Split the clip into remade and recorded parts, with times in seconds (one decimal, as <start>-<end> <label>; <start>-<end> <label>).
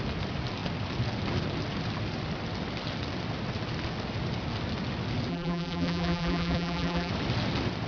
0.0-5.3 recorded; 5.3-7.1 remade; 7.1-7.9 recorded